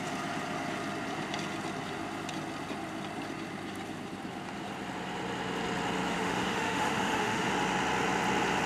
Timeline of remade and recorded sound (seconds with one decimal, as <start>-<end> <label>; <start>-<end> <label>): 0.0-6.1 recorded; 6.1-7.5 remade; 7.5-8.7 recorded